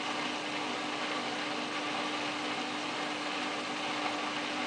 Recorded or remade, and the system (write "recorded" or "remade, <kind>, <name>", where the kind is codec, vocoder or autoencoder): recorded